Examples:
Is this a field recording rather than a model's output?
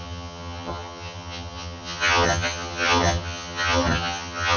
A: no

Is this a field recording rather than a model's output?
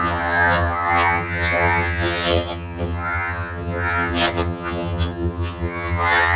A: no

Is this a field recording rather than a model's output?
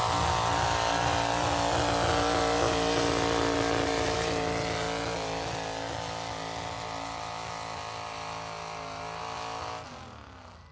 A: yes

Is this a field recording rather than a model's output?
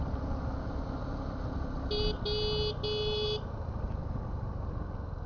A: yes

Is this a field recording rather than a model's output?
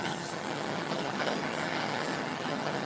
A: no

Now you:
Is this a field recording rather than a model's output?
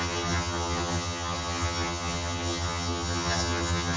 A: no